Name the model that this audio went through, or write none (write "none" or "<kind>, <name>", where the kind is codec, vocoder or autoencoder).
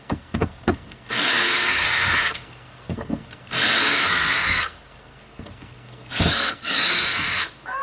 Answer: codec, SNAC